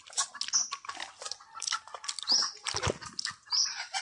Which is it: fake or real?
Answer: real